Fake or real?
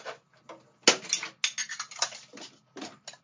real